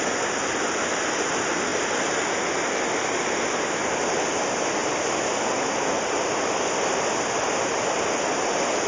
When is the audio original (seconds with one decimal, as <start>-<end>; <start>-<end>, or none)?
0.0-8.9